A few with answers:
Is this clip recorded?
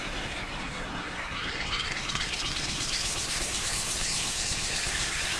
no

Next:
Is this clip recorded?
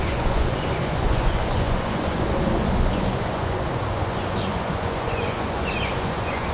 no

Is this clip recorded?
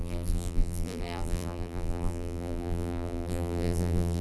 no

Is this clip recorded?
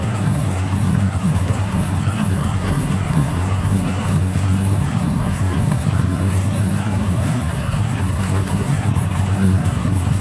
no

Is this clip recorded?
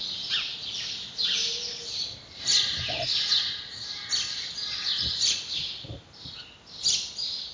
yes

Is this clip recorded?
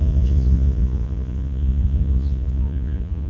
no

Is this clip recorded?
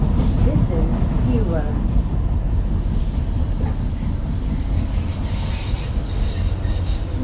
yes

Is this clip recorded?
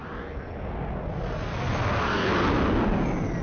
yes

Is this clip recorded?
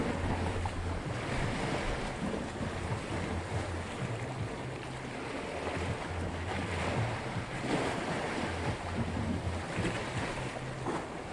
yes